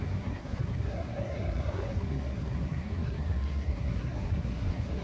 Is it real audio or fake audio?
fake